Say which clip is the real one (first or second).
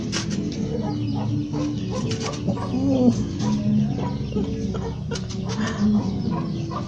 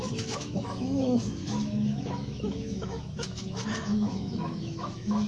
first